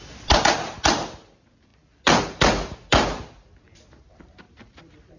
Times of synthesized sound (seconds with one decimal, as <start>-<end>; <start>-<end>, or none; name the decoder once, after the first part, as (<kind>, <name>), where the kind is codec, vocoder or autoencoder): none